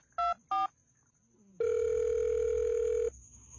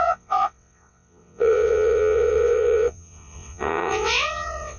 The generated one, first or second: second